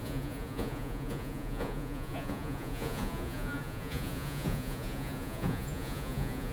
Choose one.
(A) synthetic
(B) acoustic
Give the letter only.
A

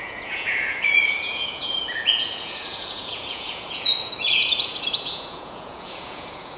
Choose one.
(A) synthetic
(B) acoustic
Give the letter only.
A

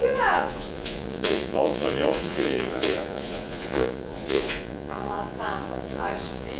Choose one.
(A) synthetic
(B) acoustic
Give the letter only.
A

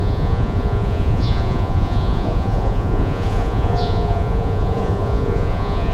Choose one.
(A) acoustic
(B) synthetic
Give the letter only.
B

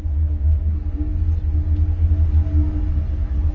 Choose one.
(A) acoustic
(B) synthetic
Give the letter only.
A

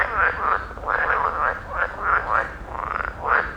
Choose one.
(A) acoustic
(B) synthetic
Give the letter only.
A